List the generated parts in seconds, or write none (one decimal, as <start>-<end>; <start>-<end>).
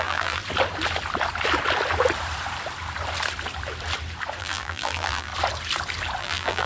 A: 0.0-0.4; 4.4-5.3; 6.2-6.7